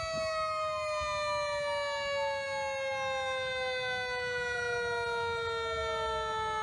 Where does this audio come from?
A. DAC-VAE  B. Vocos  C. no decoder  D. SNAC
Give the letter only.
C